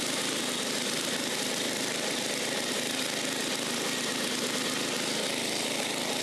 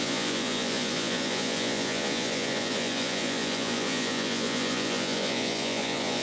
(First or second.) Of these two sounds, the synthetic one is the second